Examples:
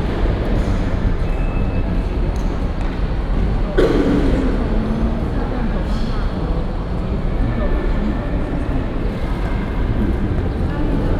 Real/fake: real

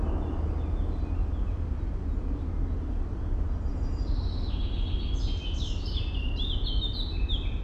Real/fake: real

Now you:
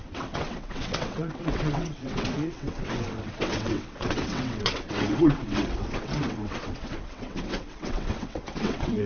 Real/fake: fake